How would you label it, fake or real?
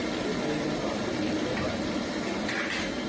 real